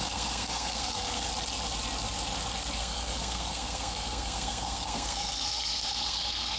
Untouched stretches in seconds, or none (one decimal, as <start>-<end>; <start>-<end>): 1.3-2.8